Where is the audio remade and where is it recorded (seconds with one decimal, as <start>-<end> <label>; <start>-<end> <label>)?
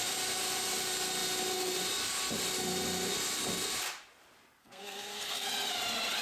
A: 0.0-4.6 recorded; 4.6-5.5 remade; 5.5-6.2 recorded